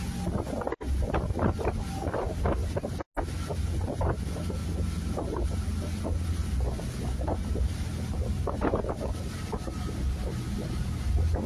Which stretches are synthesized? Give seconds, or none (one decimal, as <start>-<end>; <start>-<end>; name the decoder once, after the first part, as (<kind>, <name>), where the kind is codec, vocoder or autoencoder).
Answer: 4.6-6.0 (vocoder, BigVGAN v2); 7.4-11.1